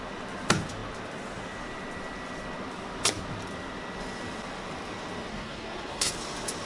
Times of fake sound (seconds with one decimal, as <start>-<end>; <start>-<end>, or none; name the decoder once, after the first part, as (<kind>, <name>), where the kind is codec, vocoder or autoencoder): 5.3-6.1 (codec, SNAC)